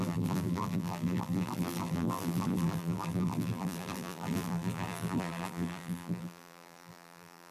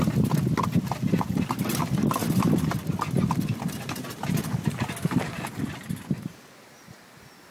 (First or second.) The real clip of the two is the second